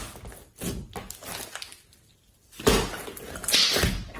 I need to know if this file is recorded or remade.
recorded